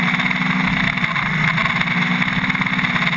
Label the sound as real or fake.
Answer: real